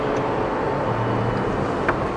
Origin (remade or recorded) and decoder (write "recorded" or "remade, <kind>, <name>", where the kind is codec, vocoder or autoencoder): recorded